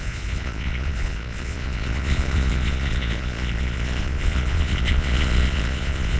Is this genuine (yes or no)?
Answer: no